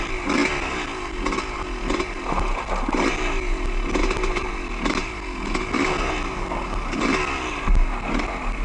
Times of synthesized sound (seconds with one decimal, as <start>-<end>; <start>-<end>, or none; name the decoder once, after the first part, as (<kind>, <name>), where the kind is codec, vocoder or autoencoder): none